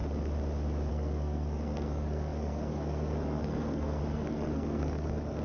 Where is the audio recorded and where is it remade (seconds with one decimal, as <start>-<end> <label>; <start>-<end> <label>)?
0.0-0.9 recorded; 0.9-5.4 remade